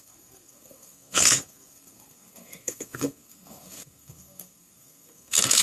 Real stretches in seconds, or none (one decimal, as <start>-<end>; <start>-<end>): none